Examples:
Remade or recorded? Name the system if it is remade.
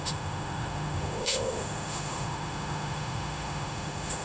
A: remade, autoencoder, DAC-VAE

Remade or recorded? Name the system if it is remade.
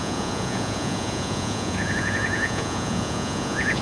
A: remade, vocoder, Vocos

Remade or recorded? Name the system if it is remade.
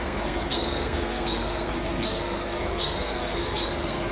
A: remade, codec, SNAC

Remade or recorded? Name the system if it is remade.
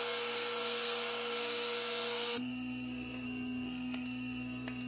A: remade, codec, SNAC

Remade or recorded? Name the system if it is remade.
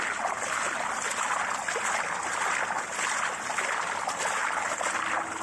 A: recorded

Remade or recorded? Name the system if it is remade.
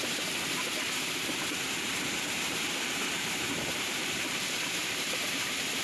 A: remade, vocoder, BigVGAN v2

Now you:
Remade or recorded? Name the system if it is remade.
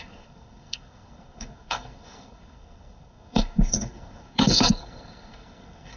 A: remade, codec, SNAC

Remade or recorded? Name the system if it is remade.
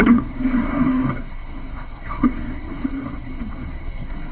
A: remade, codec, SNAC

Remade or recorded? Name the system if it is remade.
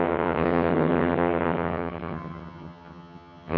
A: remade, vocoder, HiFi-GAN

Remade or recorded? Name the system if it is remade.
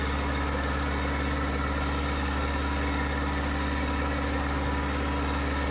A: recorded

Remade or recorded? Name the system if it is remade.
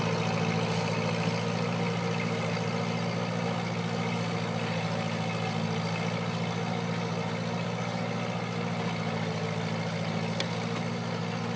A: recorded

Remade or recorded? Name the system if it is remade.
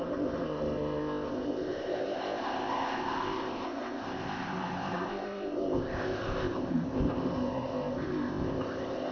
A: remade, codec, ZipCodec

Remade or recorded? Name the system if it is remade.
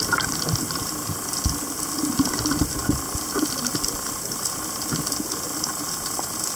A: recorded